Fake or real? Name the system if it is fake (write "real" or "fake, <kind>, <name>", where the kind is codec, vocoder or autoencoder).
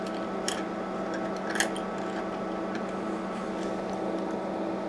real